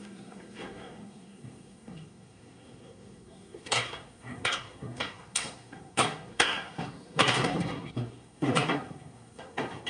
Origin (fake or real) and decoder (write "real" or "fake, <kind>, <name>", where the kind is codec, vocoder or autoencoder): fake, codec, SNAC